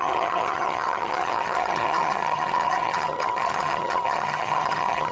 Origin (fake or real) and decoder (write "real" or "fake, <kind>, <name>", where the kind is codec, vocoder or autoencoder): fake, vocoder, HiFi-GAN